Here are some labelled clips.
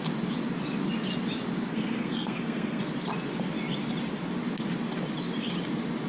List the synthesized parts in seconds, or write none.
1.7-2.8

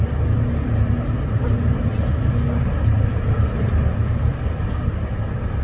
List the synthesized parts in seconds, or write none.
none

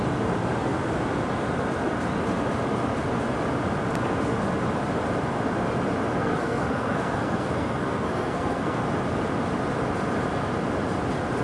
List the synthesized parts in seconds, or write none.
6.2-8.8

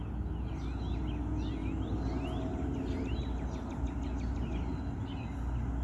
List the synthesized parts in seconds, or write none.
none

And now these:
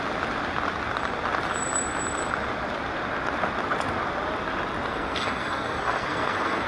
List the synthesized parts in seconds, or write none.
4.9-6.7

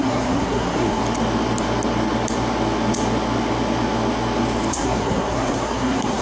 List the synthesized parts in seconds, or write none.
0.0-1.0; 4.7-6.2

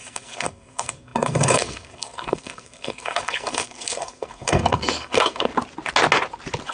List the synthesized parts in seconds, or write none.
0.0-5.5